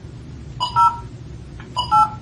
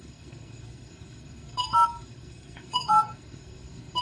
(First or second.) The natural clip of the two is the first